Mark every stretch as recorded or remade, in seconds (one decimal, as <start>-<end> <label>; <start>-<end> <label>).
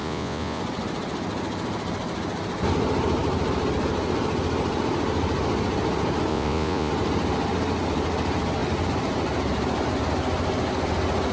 0.0-0.6 remade; 0.6-6.3 recorded; 6.3-6.9 remade; 6.9-11.3 recorded